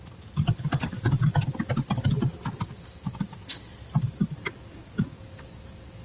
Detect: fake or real real